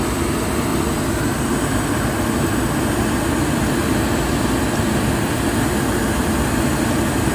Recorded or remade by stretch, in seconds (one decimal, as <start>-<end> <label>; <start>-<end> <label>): 0.0-7.3 recorded